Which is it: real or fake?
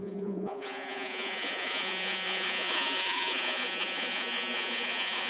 fake